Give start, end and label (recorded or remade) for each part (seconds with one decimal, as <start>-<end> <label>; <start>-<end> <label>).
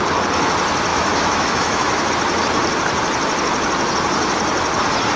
0.0-0.9 recorded; 0.9-2.1 remade; 2.1-5.2 recorded